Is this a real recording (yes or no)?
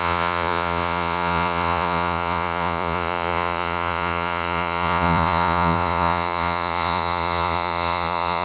no